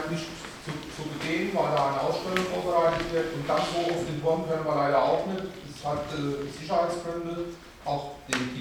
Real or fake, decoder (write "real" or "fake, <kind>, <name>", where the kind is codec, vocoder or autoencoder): real